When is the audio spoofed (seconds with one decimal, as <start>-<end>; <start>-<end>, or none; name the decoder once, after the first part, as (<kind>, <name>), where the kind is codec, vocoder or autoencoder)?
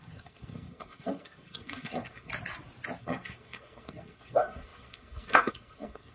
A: 0.0-2.3 (codec, SNAC); 3.0-6.1